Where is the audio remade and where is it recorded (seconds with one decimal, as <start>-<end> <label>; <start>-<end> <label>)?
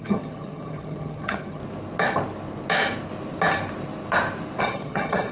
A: 0.0-1.6 remade; 1.6-4.6 recorded; 4.6-5.3 remade